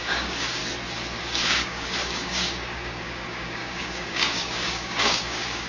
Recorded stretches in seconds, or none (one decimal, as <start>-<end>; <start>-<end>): 0.6-1.2